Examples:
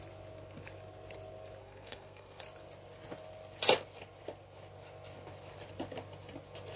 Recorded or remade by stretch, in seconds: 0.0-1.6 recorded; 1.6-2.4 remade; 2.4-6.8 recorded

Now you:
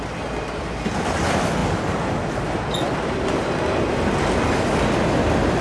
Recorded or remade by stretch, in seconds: 0.0-5.6 recorded

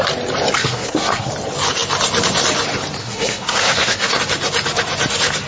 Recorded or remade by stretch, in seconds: 0.0-0.6 recorded; 0.6-1.3 remade; 1.3-3.0 recorded; 3.0-4.2 remade; 4.2-5.5 recorded

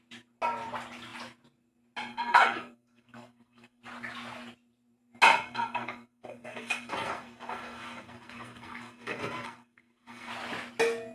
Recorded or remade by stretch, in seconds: 0.0-2.1 recorded; 2.1-3.8 remade; 3.8-5.3 recorded; 5.3-10.3 remade; 10.3-11.1 recorded

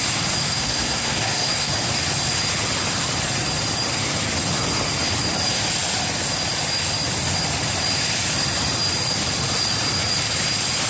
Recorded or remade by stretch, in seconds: 0.0-0.4 recorded; 0.4-1.7 remade; 1.7-10.9 recorded

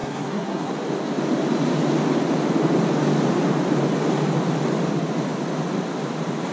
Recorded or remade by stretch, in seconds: 0.0-0.7 remade; 0.7-6.5 recorded